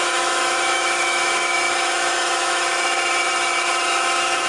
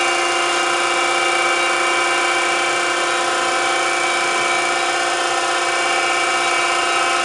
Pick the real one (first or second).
second